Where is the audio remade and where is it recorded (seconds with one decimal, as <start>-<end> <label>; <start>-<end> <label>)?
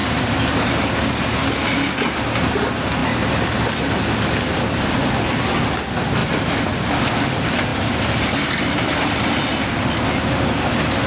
0.0-3.0 recorded; 3.0-4.0 remade; 4.0-7.7 recorded; 7.7-9.4 remade; 9.4-11.1 recorded